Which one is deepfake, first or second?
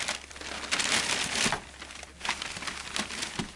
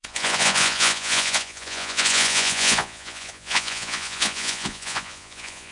second